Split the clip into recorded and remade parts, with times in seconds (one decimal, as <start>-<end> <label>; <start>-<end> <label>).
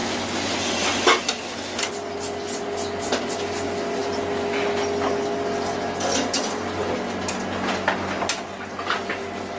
0.0-9.6 recorded